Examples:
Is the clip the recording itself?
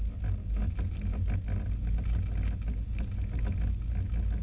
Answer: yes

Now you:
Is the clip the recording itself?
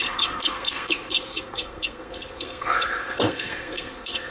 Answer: no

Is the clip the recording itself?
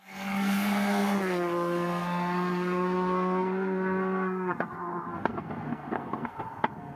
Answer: no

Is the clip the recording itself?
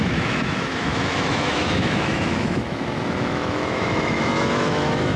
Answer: no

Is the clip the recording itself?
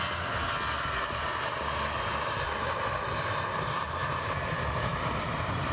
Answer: yes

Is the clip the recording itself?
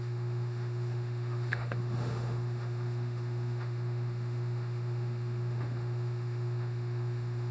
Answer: no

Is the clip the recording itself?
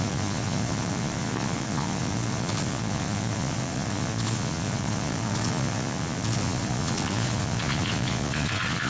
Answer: no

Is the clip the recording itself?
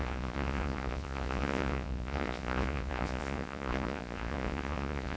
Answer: no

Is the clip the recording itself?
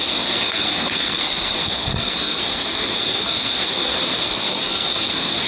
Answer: no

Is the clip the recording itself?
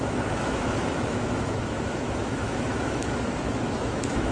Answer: no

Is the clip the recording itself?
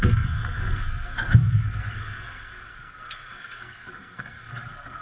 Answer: no